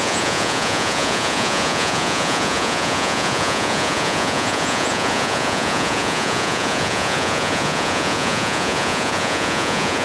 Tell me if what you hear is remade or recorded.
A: remade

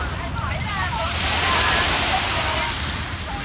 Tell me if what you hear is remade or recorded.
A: remade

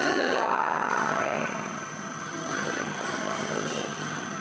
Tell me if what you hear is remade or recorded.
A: remade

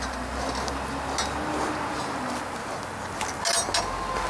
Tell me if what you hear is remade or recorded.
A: recorded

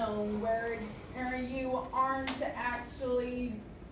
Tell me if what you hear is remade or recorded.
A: recorded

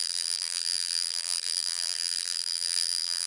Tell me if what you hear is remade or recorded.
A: remade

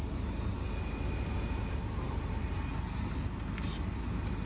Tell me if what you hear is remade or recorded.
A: recorded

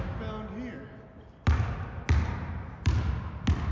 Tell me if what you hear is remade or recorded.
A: recorded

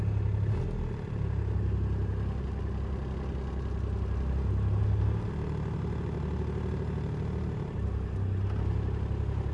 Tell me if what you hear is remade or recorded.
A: recorded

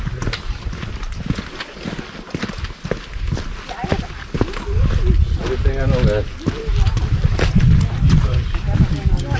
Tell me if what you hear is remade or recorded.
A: recorded